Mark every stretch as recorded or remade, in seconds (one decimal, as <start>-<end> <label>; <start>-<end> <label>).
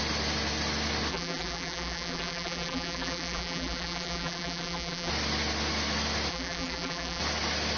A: 0.0-1.1 recorded; 1.1-5.1 remade; 5.1-6.3 recorded; 6.3-7.2 remade; 7.2-7.8 recorded